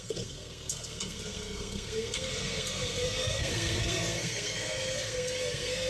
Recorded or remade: remade